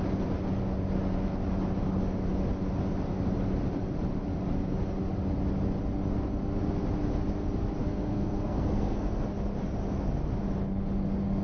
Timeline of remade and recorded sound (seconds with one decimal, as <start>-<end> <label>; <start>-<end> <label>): 0.0-7.8 recorded; 7.8-9.1 remade; 9.1-11.4 recorded